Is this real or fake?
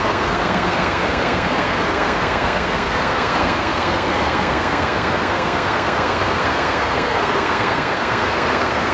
fake